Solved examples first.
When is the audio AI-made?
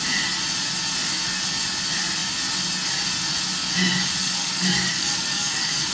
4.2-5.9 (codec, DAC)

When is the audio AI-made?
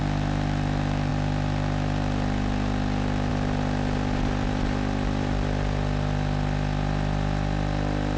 none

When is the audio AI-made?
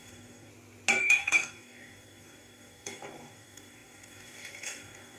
0.0-0.5 (codec, DAC); 1.0-5.2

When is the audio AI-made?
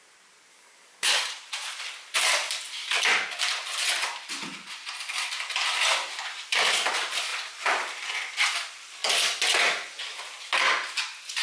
0.5-1.3 (codec, DAC)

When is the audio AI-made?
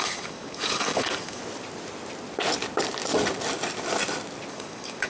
0.0-1.4 (codec, DAC); 4.5-5.1